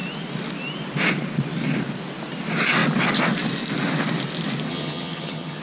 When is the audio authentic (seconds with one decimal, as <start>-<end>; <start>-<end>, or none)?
0.0-4.7